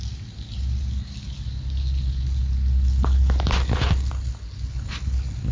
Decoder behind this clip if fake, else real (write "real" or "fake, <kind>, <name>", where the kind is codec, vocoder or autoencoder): real